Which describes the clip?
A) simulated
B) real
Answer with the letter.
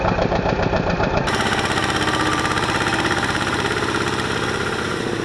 A